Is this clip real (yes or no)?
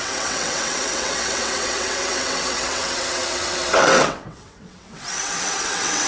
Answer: no